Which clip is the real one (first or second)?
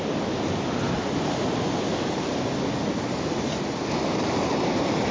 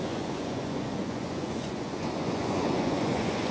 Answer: first